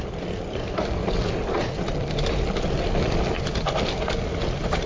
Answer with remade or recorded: recorded